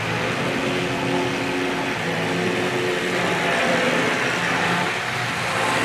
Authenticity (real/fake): real